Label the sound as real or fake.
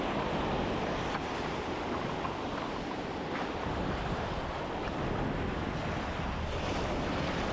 real